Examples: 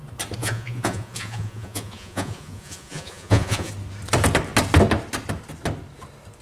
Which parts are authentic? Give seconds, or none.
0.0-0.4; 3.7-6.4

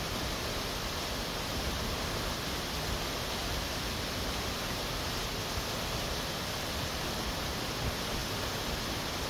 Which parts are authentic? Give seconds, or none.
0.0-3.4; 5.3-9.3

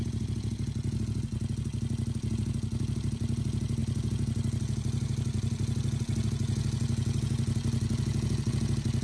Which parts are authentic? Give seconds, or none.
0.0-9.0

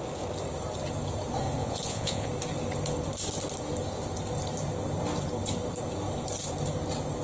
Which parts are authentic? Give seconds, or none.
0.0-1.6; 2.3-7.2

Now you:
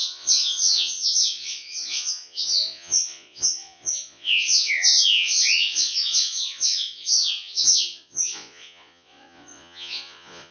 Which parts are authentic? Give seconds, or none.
none

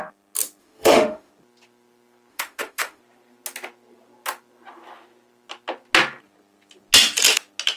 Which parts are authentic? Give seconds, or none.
0.0-0.6; 1.3-2.3; 3.0-7.8

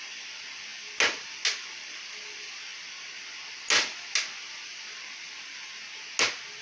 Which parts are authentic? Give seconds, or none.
0.0-6.6